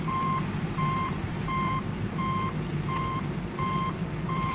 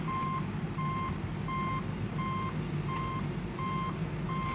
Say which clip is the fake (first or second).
first